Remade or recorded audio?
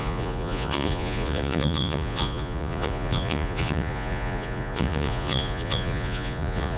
remade